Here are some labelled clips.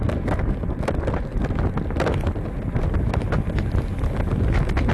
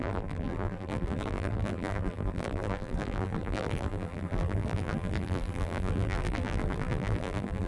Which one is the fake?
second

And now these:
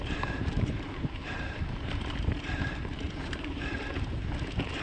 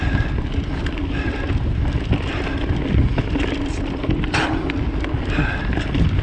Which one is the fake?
first